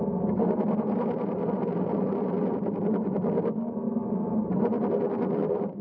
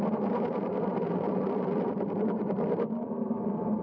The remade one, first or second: second